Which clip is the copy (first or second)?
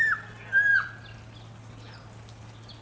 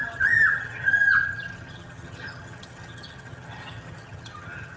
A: second